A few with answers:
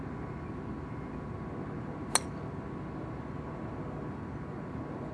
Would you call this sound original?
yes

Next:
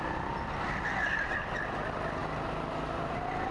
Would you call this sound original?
yes